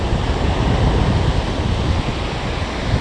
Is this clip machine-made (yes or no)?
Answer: no